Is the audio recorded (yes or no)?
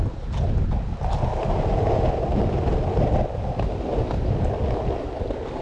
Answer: yes